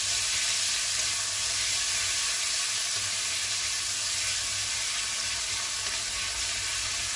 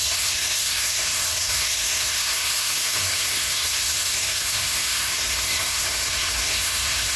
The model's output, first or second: second